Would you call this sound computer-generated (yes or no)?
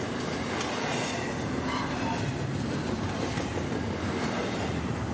no